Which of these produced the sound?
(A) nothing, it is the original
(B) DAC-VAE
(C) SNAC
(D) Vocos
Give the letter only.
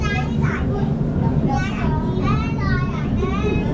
A